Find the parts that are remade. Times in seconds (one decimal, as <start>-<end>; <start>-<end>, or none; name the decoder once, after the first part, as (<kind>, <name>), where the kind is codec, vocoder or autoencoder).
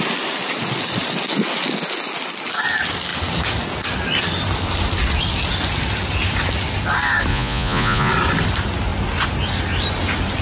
7.3-8.1 (vocoder, Vocos)